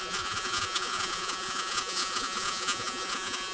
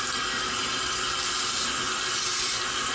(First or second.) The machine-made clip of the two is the first